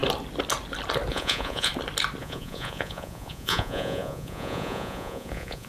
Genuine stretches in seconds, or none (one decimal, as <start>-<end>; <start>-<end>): 0.0-1.1; 1.7-2.2